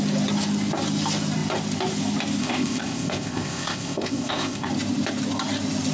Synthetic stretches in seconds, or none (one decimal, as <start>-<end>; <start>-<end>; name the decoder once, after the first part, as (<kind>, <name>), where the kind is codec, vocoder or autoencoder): 2.4-4.7 (codec, ZipCodec)